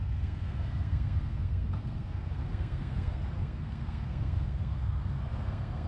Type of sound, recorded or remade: remade